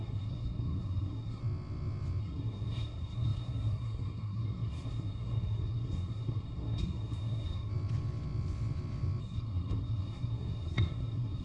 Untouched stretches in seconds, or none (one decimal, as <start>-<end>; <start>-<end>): 1.4-2.2; 7.7-9.2